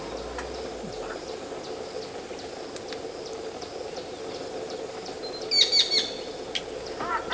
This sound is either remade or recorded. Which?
recorded